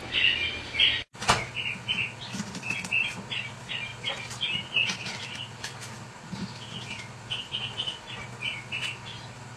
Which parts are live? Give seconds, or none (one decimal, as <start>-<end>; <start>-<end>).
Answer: 0.0-9.6